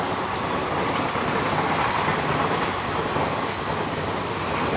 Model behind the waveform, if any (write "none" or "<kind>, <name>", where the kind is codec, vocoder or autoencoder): none